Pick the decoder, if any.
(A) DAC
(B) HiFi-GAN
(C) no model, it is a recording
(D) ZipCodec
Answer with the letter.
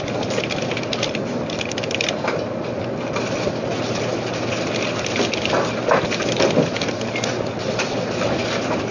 C